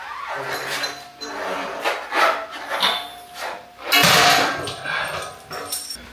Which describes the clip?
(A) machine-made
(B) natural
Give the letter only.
B